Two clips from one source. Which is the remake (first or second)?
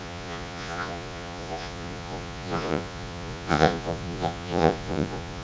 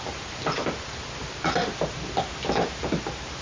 first